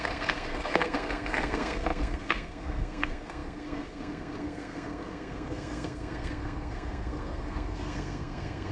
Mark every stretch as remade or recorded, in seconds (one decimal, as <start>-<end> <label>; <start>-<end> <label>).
0.0-8.7 remade